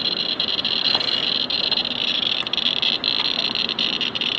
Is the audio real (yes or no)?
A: no